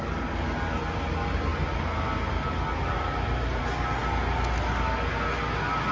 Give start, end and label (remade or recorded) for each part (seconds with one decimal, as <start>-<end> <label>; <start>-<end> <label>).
0.0-5.9 recorded